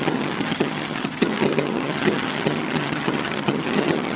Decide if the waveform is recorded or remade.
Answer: remade